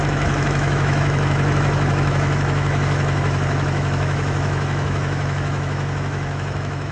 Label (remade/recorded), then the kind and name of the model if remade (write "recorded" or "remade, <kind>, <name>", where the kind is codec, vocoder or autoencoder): remade, autoencoder, DAC-VAE